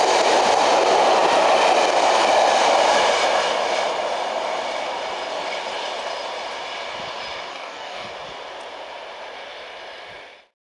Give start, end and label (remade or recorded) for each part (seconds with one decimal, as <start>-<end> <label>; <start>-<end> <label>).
0.0-7.5 recorded; 7.5-8.1 remade; 8.1-10.7 recorded